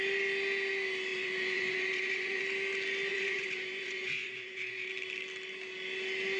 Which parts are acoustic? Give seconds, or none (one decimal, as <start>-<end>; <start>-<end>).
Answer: 0.0-1.1; 2.4-3.1; 4.9-6.4